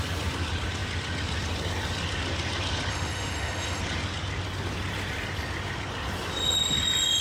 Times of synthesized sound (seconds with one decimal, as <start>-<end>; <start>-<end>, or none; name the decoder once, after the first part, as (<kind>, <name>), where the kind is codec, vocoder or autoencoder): 2.9-3.8 (autoencoder, DAC-VAE)